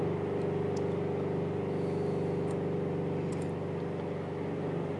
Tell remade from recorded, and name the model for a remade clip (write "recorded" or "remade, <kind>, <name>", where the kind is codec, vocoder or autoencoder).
recorded